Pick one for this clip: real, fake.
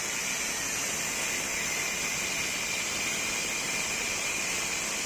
real